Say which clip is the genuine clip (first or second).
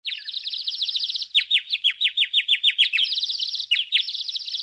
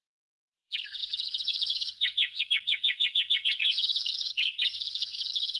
first